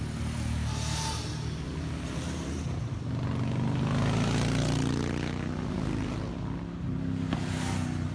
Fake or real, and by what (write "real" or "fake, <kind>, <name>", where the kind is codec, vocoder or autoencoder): real